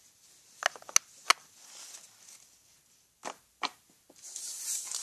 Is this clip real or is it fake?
real